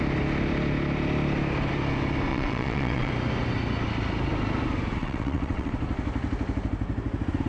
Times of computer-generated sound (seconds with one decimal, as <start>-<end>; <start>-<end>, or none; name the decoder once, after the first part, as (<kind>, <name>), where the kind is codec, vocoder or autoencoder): 2.3-3.1 (vocoder, WaveNeXt); 5.0-5.7